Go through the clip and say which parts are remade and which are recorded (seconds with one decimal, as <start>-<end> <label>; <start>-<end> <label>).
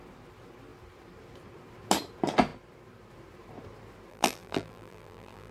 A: 0.0-4.1 recorded; 4.1-5.5 remade